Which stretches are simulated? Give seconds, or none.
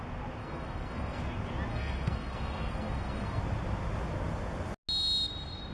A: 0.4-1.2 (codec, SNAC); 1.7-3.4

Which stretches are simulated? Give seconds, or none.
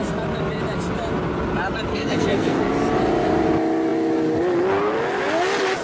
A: 1.9-2.7 (codec, SNAC)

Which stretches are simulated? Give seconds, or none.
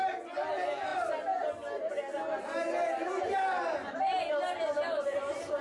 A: none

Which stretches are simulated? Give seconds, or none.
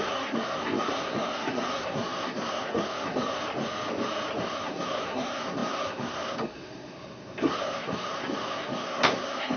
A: 0.0-3.4 (codec, SNAC); 4.4-9.6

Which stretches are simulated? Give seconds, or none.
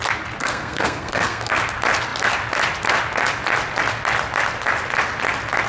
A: 0.4-1.6 (codec, SNAC)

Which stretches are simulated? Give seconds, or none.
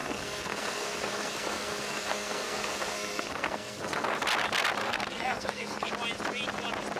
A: 0.0-4.2 (codec, SNAC); 4.8-5.9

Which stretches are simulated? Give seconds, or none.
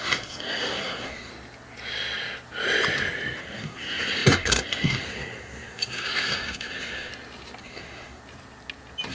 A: 0.0-1.3 (codec, SNAC); 3.4-7.1; 7.6-8.2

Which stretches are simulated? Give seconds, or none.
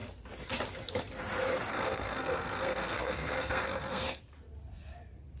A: 1.7-4.2 (codec, SNAC)